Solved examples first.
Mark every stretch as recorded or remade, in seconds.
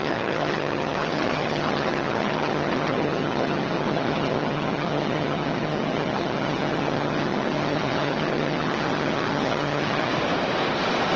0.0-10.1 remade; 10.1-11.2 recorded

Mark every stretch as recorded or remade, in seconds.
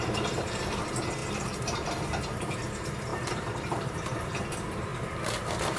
0.0-4.9 remade; 4.9-5.8 recorded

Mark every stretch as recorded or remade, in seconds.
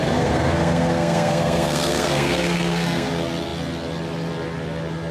0.0-3.1 remade; 3.1-5.1 recorded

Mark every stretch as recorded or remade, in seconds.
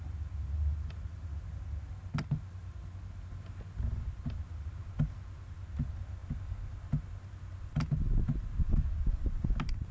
0.0-9.9 recorded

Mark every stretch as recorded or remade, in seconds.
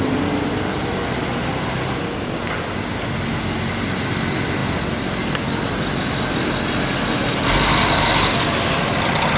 0.0-9.4 recorded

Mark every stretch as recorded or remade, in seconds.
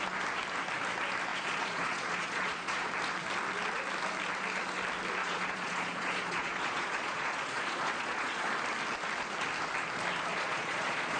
0.0-1.3 recorded; 1.3-2.9 remade; 2.9-5.2 recorded; 5.2-8.5 remade; 8.5-10.3 recorded; 10.3-11.2 remade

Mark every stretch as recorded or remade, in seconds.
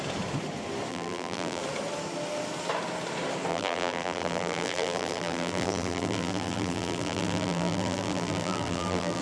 0.0-0.9 recorded; 0.9-1.6 remade; 1.6-3.5 recorded; 3.5-9.2 remade